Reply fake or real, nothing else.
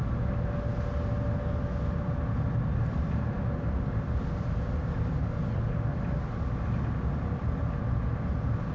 real